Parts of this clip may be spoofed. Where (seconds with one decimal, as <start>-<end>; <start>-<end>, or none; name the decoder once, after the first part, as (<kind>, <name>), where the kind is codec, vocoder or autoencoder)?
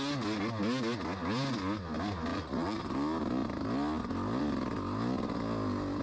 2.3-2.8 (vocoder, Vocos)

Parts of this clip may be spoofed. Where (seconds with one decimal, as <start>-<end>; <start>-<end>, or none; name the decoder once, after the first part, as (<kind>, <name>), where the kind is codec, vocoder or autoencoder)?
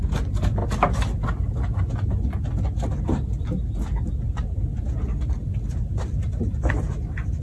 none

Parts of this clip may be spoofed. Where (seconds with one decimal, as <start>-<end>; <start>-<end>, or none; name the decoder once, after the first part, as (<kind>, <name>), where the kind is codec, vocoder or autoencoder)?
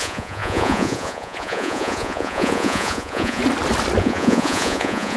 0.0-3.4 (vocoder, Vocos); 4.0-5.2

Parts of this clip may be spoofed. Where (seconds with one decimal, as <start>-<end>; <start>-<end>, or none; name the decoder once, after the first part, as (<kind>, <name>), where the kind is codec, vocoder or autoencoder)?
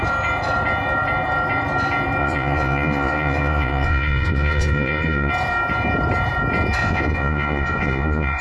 2.2-5.3 (vocoder, Vocos); 6.8-8.4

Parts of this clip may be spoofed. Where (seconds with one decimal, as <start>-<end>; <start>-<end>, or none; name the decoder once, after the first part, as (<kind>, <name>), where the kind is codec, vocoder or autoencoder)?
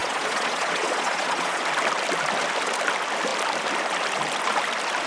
0.0-1.6 (vocoder, Vocos)